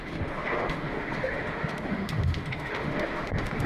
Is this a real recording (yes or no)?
no